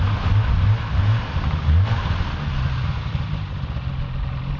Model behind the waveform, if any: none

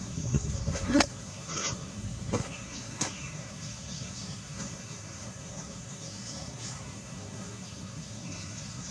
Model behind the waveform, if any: codec, SNAC